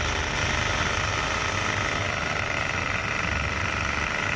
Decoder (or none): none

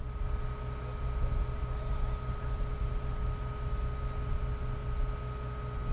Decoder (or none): none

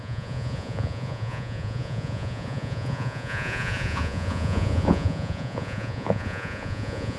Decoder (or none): vocoder, Vocos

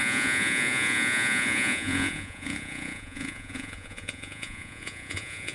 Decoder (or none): vocoder, Vocos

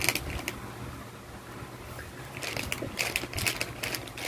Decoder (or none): none